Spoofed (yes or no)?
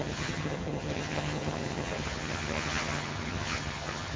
yes